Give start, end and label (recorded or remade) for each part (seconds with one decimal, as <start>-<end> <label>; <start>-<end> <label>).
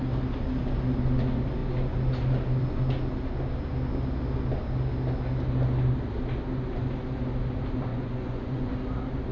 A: 0.0-7.9 recorded; 7.9-8.7 remade; 8.7-9.3 recorded